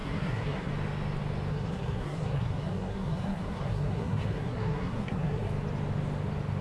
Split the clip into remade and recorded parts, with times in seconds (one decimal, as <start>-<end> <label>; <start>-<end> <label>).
0.0-0.7 remade; 0.7-1.5 recorded; 1.5-5.5 remade; 5.5-6.6 recorded